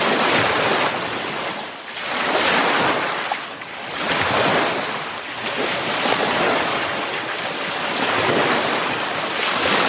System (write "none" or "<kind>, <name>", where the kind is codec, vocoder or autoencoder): none